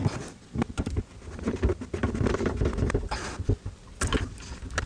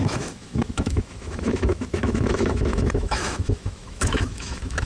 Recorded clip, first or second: first